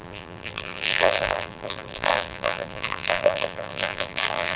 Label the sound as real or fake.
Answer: fake